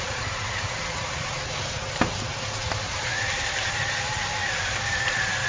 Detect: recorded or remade remade